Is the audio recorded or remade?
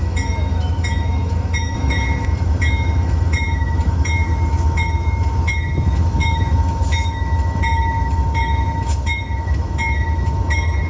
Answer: remade